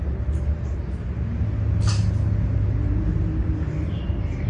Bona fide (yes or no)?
yes